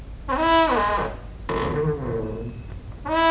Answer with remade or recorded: recorded